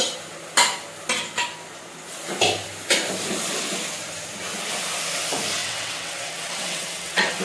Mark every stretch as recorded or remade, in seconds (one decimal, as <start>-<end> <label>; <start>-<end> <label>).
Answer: 0.0-5.6 recorded; 5.6-7.4 remade